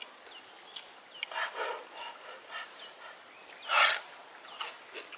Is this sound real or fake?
real